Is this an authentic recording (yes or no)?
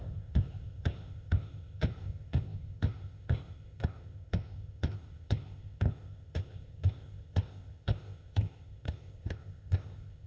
no